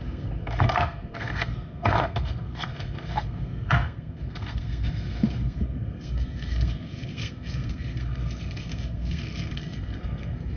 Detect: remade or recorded remade